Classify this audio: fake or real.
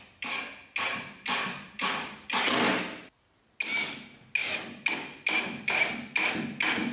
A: real